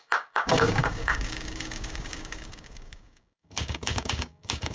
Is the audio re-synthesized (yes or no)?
yes